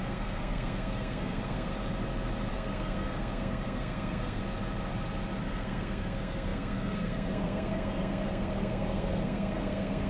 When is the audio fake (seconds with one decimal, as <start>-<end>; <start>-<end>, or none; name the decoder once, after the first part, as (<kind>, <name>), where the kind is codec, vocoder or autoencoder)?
0.0-1.7 (codec, SNAC); 2.5-4.4; 5.4-10.1